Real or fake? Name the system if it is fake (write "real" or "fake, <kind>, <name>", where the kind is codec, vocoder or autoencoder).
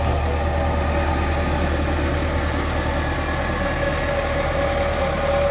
real